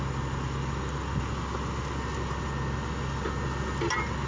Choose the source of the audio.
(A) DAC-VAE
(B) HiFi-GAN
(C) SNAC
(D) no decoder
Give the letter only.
D